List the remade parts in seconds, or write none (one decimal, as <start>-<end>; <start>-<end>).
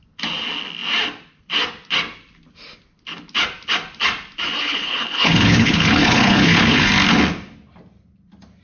4.6-6.9